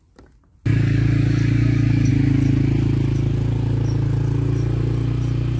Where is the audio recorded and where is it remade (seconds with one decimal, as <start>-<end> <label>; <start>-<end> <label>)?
0.0-0.7 recorded; 0.7-2.1 remade; 2.1-5.6 recorded

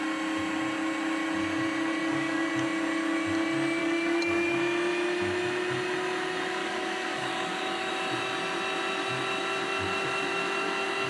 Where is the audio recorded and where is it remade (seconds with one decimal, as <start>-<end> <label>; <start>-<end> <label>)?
0.0-2.0 recorded; 2.0-2.5 remade; 2.5-3.8 recorded; 3.8-4.6 remade; 4.6-6.6 recorded; 6.6-7.9 remade; 7.9-11.1 recorded

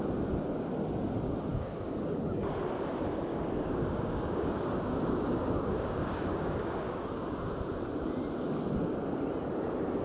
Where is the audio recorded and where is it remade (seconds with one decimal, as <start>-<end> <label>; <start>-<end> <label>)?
0.0-1.5 recorded; 1.5-2.2 remade; 2.2-3.3 recorded; 3.3-7.4 remade; 7.4-10.0 recorded

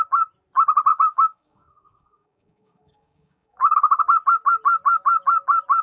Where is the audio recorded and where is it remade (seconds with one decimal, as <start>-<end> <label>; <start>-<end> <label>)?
0.0-0.9 recorded; 0.9-4.0 remade; 4.0-5.8 recorded

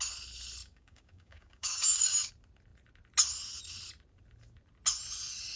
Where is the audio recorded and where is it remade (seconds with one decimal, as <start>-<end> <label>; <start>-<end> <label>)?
0.0-0.6 recorded; 0.6-2.3 remade; 2.3-5.6 recorded

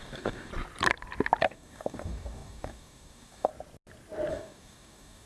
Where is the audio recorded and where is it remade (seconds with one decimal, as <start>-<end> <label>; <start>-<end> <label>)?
0.0-0.5 remade; 0.5-1.4 recorded; 1.4-3.5 remade; 3.5-4.3 recorded; 4.3-5.3 remade

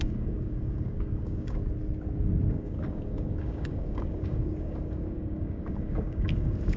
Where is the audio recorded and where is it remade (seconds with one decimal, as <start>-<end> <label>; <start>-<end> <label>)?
0.0-1.6 remade; 1.6-2.5 recorded; 2.5-6.8 remade